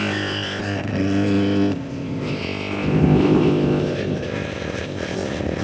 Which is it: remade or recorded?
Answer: remade